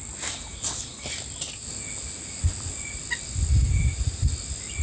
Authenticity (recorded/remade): recorded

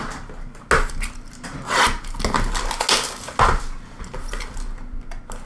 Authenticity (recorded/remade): recorded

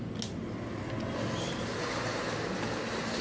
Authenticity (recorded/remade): recorded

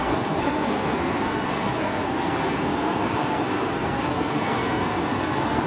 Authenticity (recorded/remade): remade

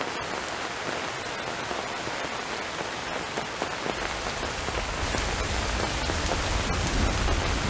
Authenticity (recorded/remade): recorded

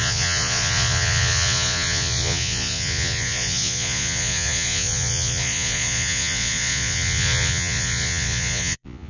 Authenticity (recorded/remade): remade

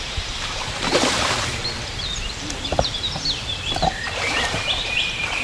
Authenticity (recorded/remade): remade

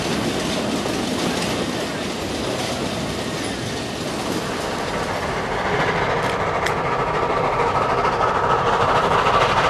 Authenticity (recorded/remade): recorded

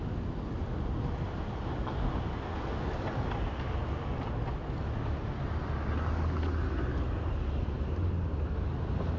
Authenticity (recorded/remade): recorded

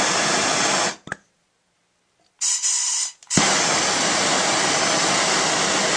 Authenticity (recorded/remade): recorded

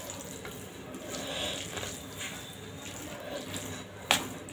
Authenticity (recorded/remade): recorded